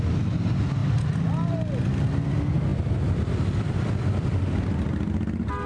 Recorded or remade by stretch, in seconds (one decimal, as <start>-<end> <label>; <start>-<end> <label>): 0.0-0.8 recorded; 0.8-1.5 remade; 1.5-5.7 recorded

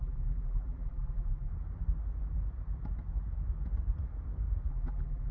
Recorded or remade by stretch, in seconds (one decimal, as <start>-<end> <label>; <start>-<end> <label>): 0.0-1.5 remade; 1.5-4.7 recorded; 4.7-5.3 remade

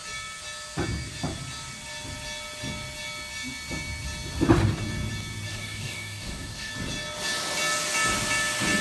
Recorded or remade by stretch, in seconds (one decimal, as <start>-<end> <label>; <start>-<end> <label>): 0.0-5.5 recorded; 5.5-6.7 remade; 6.7-8.8 recorded

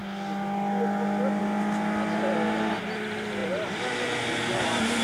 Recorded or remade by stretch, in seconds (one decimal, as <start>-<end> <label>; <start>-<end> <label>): 0.0-5.0 recorded

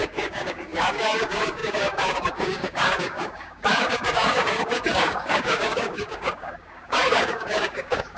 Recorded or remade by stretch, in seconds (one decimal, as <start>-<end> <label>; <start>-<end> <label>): 0.0-8.2 remade